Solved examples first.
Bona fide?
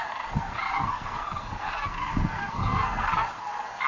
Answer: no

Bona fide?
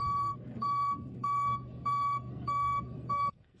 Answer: no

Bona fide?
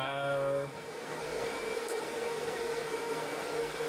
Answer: no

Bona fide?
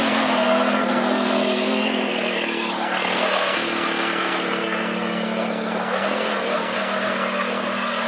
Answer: no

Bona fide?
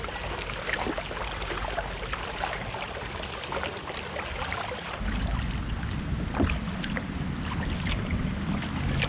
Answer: yes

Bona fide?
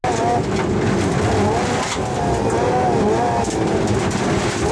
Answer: yes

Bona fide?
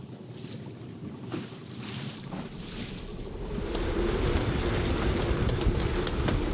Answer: yes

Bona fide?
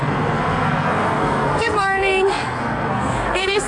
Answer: no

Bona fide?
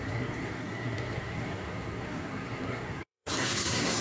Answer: no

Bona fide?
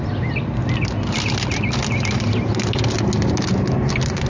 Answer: yes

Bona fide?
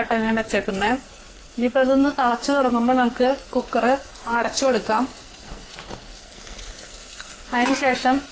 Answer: no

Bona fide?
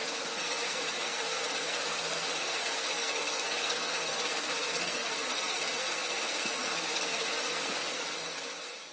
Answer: no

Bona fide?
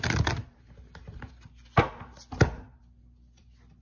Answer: yes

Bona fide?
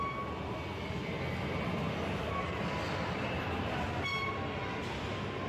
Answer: yes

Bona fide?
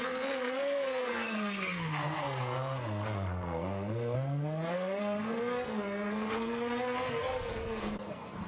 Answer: no